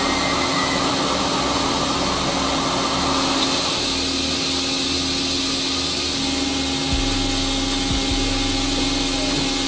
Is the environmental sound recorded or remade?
recorded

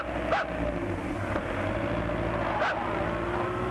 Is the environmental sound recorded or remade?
recorded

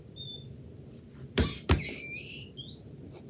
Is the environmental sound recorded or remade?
recorded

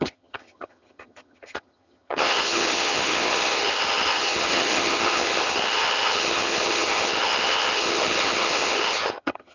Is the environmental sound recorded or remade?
remade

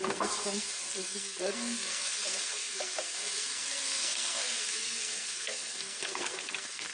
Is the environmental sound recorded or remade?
remade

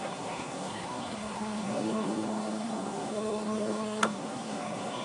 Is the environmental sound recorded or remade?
remade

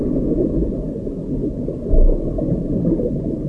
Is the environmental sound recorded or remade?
recorded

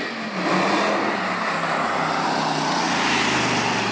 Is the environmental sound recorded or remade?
recorded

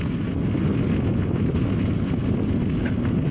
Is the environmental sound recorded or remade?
recorded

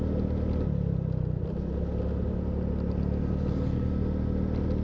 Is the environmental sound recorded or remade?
recorded